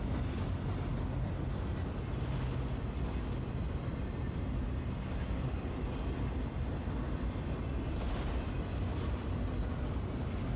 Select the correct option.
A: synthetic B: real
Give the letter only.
B